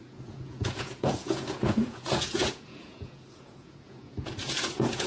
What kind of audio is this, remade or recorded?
remade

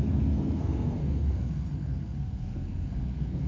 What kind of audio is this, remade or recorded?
remade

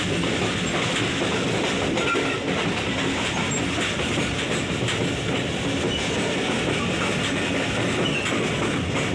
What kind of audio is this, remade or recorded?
recorded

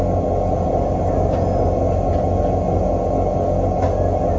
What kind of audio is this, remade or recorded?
recorded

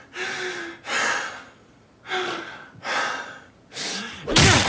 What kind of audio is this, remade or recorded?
recorded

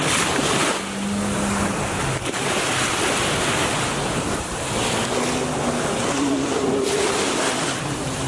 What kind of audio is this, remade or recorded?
recorded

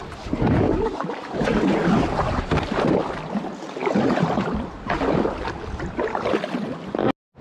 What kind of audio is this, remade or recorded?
recorded